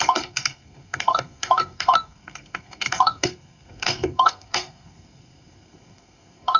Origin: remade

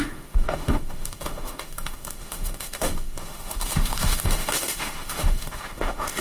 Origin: remade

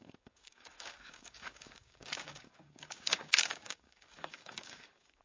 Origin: remade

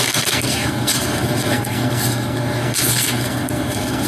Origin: remade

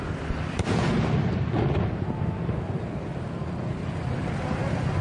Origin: recorded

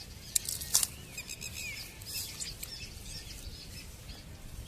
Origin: recorded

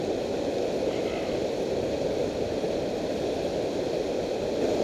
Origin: recorded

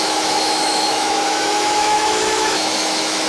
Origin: remade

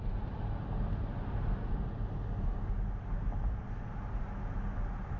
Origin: recorded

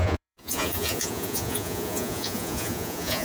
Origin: remade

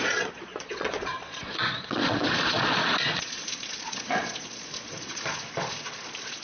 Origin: remade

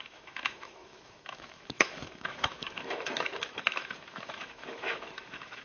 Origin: remade